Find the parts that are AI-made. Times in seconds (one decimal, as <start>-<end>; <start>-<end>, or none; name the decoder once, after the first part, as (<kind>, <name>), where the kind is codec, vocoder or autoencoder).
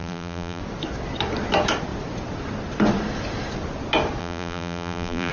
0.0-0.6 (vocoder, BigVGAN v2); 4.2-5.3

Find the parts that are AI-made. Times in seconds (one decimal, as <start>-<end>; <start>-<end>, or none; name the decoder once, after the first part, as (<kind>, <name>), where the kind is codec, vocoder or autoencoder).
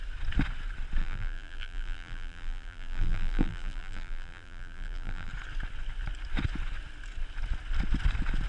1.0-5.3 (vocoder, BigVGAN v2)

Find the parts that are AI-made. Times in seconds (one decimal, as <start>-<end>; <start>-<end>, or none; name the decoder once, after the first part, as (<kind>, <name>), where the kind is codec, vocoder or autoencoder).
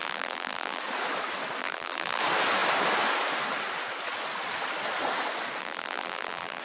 0.0-0.8 (vocoder, BigVGAN v2); 1.6-2.2; 5.6-6.6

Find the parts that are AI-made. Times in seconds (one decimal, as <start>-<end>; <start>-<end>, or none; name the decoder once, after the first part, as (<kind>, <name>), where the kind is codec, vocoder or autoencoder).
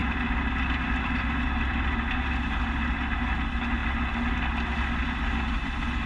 0.0-1.9 (vocoder, BigVGAN v2)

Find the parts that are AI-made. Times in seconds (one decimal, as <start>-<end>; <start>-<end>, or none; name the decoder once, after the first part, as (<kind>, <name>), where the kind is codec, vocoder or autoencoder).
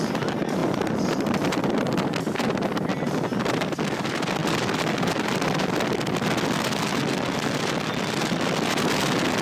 0.6-2.2 (vocoder, BigVGAN v2); 4.4-5.0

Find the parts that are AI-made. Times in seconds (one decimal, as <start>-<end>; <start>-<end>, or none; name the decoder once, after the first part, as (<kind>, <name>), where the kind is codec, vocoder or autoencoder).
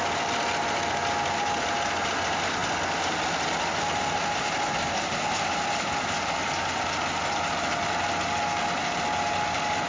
none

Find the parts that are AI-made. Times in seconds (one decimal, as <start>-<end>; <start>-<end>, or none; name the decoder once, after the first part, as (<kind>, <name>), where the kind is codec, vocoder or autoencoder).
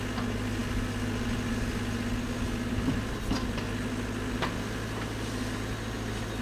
none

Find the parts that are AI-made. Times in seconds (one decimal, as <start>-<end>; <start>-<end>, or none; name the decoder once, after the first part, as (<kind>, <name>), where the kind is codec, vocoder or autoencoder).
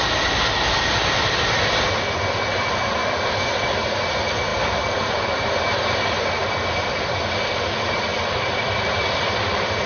3.0-3.6 (vocoder, BigVGAN v2); 8.1-9.2